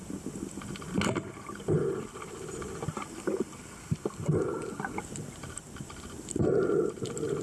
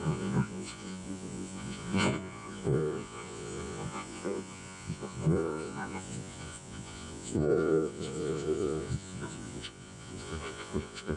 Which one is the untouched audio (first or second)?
first